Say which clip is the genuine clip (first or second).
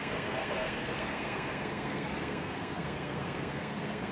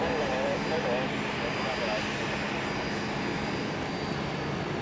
second